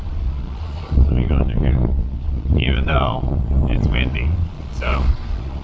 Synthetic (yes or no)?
yes